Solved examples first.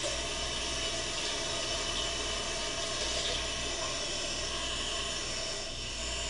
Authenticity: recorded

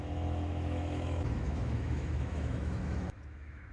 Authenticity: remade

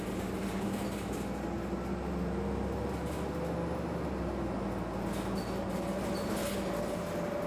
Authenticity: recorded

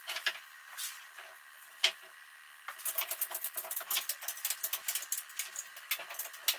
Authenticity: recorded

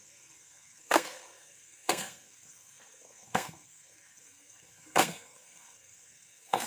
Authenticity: remade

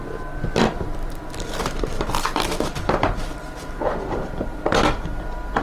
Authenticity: remade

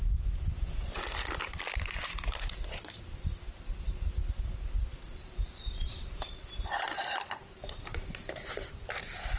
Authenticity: recorded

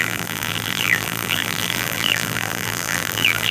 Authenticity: remade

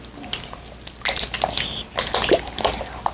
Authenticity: recorded